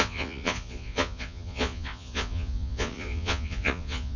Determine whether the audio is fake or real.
fake